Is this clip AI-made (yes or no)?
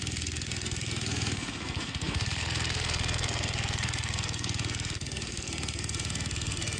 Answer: yes